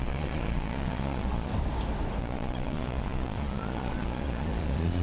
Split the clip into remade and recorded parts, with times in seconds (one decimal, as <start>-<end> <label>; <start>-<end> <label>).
0.0-1.5 remade; 1.5-2.2 recorded; 2.2-5.0 remade